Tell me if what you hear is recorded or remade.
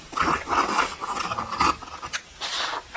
recorded